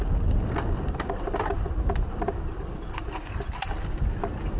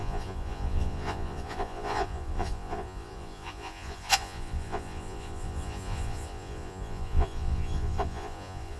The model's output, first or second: second